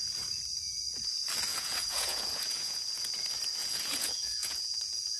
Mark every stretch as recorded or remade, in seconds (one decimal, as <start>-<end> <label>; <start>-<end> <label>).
0.0-1.5 recorded; 1.5-3.1 remade; 3.1-3.6 recorded; 3.6-5.2 remade